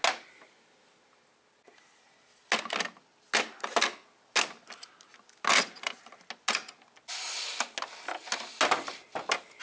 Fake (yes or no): no